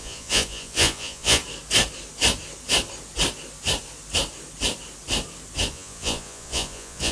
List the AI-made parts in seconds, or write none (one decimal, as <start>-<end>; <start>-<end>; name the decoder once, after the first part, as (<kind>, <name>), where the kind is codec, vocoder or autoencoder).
0.0-1.4 (vocoder, Vocos); 5.7-7.1